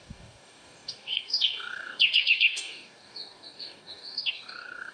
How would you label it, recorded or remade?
remade